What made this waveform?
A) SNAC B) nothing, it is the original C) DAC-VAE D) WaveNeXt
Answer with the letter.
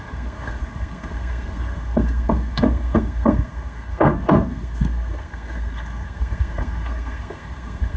A